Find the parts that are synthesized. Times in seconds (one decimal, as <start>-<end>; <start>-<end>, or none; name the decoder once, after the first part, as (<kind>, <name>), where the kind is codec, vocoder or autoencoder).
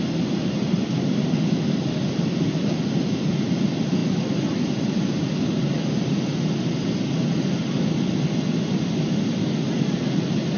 none